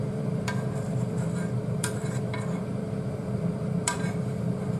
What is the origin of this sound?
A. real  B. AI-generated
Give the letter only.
B